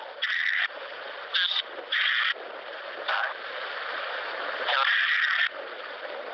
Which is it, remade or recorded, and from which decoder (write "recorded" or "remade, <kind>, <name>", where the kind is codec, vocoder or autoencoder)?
recorded